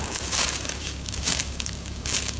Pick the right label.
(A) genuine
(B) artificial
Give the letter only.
B